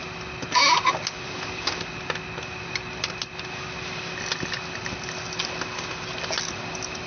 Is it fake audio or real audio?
real